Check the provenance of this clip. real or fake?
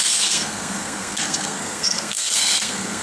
fake